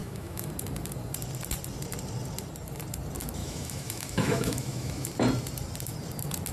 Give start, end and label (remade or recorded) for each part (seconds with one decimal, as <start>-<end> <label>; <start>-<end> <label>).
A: 0.0-0.5 remade; 0.5-3.4 recorded; 3.4-5.1 remade; 5.1-6.5 recorded